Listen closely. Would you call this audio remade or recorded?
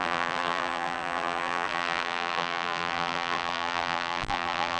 remade